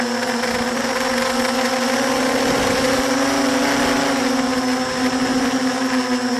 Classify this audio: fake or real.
real